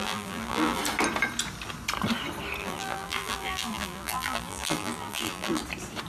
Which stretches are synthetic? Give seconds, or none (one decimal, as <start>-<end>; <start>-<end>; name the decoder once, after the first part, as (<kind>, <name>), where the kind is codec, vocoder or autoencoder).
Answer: 0.0-0.8 (vocoder, BigVGAN v2); 2.6-5.6